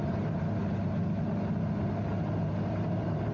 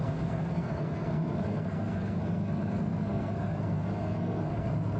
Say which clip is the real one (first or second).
first